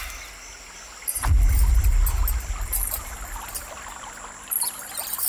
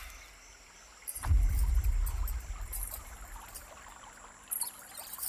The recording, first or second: first